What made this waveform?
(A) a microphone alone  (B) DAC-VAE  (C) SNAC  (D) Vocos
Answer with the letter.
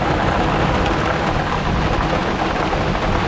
A